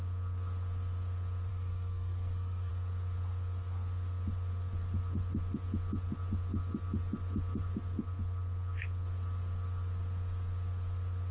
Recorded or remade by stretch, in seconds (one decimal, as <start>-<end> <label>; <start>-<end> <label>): 0.0-1.5 recorded; 1.5-2.7 remade; 2.7-11.3 recorded